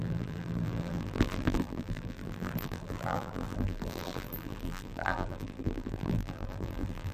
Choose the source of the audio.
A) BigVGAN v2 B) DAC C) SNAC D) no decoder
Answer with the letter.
A